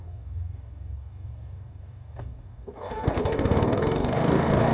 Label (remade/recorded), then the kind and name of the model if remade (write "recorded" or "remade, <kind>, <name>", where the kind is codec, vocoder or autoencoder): remade, codec, DAC